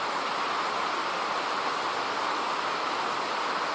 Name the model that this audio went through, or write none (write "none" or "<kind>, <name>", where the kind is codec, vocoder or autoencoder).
none